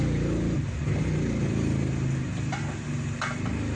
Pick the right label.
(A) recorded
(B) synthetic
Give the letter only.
A